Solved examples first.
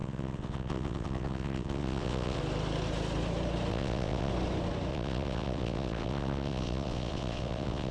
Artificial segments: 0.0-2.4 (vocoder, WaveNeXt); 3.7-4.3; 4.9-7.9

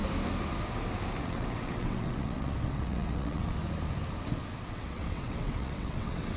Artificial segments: 1.2-3.6 (vocoder, WaveNeXt); 4.7-6.4

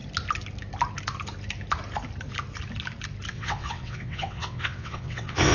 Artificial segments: 3.3-5.5 (vocoder, WaveNeXt)

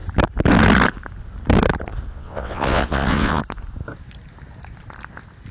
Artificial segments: 2.1-3.4 (vocoder, WaveNeXt)

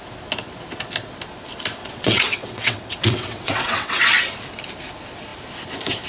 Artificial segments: 1.8-4.0 (vocoder, WaveNeXt)

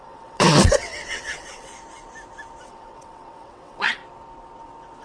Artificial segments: 0.0-1.7 (vocoder, WaveNeXt); 2.6-4.0

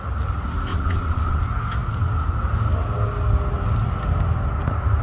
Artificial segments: 0.7-1.4 (vocoder, WaveNeXt)

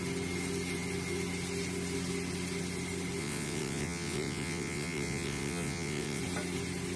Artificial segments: 3.2-6.2 (vocoder, WaveNeXt)